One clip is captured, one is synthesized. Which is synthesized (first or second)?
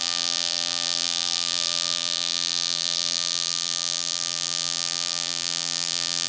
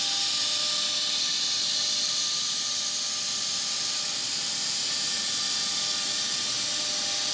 first